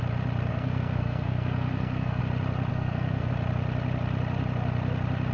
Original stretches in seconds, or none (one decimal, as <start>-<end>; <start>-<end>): 0.0-0.5; 2.2-2.7; 3.3-5.3